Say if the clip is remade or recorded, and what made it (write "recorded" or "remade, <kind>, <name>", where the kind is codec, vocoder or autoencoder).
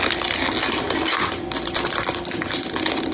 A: recorded